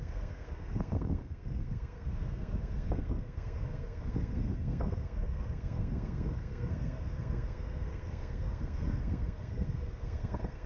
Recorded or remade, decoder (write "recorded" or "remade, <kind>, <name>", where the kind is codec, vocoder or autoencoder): remade, codec, SNAC